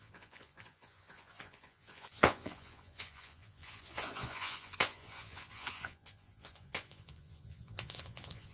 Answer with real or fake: fake